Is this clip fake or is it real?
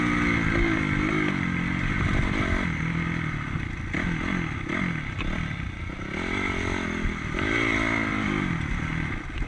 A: real